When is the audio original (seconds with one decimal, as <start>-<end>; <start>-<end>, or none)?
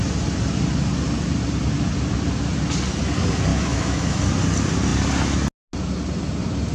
0.0-3.5; 4.2-6.7